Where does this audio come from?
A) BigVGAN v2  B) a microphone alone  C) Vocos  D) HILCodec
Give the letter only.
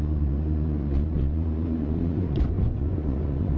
C